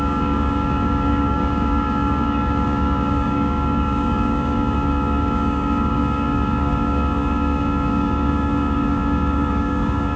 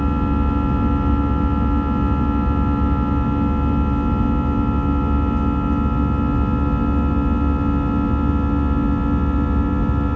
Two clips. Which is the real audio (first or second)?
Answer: second